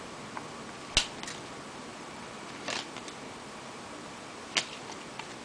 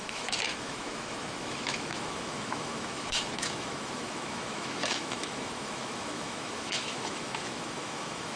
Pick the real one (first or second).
first